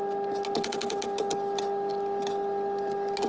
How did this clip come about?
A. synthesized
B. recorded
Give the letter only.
B